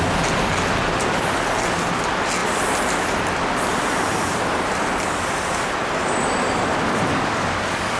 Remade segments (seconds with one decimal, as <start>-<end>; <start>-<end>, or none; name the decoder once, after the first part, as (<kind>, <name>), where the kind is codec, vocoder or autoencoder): 7.1-8.0 (codec, DAC)